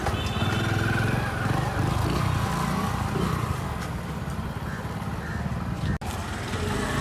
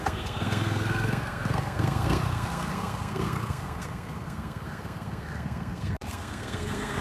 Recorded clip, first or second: first